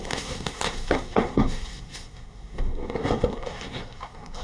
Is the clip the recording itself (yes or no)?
no